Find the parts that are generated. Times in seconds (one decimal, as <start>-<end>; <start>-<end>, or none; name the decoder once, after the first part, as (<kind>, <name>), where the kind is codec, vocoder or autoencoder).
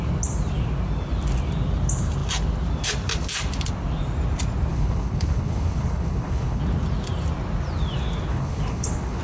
4.7-6.6 (codec, HILCodec); 8.3-9.2